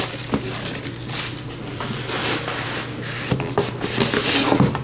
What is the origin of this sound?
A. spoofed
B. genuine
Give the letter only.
B